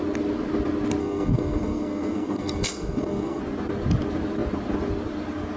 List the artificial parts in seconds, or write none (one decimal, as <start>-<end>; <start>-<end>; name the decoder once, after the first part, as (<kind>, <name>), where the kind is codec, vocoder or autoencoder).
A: 1.0-3.4 (codec, SNAC)